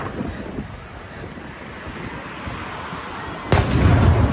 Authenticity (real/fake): real